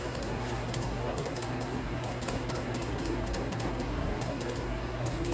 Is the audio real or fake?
fake